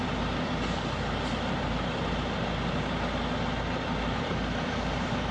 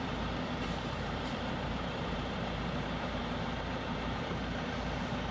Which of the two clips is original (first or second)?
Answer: first